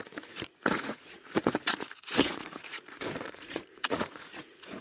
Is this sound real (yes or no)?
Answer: no